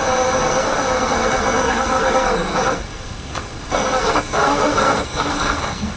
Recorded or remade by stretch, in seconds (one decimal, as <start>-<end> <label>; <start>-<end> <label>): 0.0-6.0 remade